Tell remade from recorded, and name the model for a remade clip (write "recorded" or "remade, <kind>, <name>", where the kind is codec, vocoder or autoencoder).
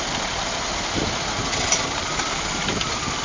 recorded